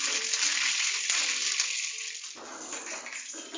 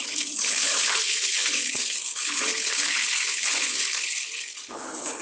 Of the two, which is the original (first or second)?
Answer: first